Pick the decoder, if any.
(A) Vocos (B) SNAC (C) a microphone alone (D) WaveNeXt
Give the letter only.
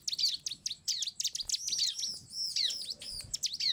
C